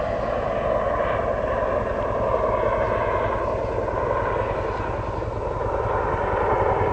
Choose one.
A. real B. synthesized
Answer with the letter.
A